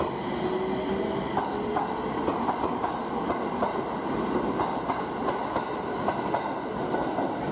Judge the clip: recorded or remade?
recorded